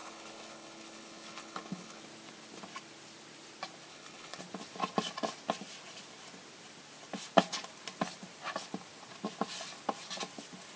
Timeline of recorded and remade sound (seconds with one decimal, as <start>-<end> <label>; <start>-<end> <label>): 0.0-2.0 remade; 2.0-3.9 recorded; 3.9-4.4 remade; 4.4-10.8 recorded